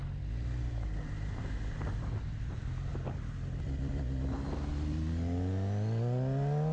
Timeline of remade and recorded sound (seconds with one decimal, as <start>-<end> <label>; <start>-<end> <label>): 0.0-6.7 recorded